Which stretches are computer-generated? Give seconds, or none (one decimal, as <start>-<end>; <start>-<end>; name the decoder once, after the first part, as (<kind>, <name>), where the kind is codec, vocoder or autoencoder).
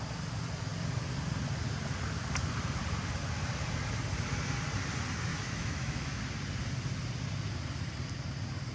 5.3-6.2 (autoencoder, DAC-VAE)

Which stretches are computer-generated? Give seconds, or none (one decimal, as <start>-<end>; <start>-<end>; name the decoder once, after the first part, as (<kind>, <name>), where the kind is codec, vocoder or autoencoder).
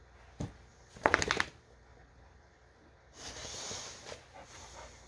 none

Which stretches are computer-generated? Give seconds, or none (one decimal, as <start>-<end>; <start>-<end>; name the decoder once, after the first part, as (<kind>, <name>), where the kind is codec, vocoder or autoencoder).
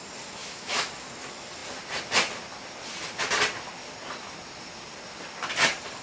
0.4-0.9 (autoencoder, DAC-VAE)